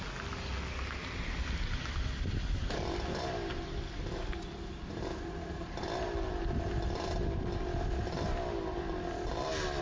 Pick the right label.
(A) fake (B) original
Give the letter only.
B